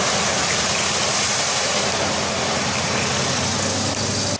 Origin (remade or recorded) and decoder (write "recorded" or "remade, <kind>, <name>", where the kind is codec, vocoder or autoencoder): recorded